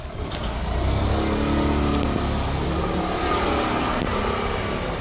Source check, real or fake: real